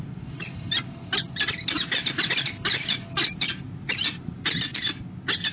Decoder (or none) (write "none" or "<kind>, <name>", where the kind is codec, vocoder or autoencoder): none